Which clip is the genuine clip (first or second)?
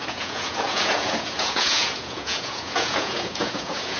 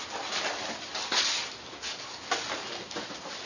second